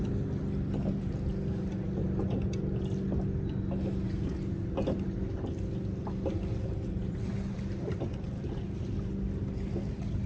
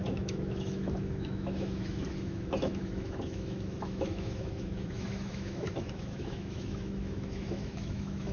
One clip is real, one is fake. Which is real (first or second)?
first